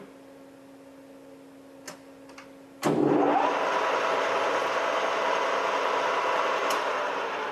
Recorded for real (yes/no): yes